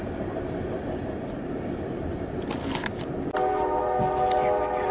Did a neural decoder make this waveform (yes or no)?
no